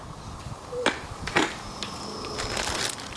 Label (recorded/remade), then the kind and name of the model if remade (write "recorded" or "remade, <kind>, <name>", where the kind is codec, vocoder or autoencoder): recorded